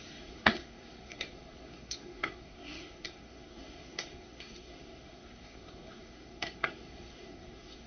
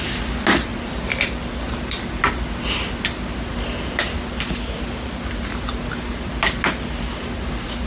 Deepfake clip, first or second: first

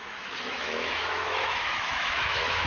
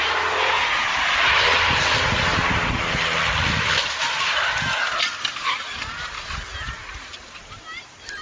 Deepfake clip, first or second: first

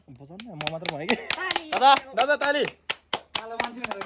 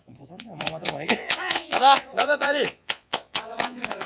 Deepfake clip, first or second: second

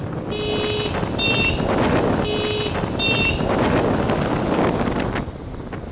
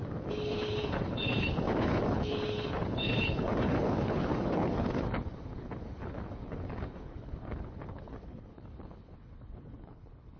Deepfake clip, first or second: second